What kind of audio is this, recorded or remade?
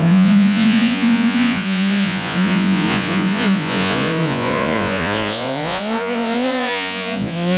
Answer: remade